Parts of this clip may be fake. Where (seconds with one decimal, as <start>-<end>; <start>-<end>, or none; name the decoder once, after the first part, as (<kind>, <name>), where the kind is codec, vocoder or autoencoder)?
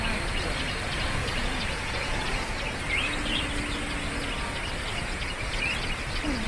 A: 1.2-3.5 (vocoder, Vocos); 4.9-5.7